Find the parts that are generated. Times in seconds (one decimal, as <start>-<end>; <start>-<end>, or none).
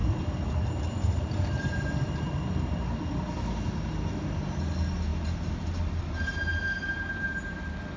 none